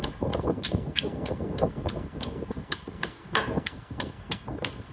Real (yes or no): no